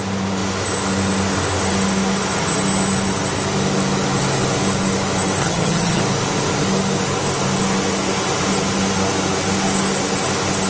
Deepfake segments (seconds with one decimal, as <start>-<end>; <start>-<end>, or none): 5.4-6.0